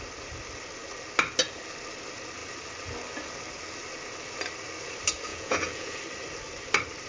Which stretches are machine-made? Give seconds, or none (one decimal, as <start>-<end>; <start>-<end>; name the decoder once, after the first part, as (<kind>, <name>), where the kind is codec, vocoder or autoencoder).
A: 5.3-6.0 (vocoder, Vocos)

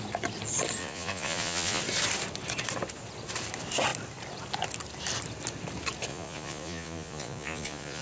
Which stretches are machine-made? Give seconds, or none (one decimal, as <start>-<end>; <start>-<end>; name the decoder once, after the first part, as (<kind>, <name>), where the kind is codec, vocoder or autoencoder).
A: 0.8-1.8 (vocoder, Vocos); 6.1-8.0